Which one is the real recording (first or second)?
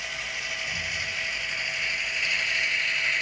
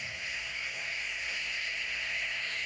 first